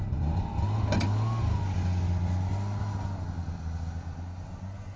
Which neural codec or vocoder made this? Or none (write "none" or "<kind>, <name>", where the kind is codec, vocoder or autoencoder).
none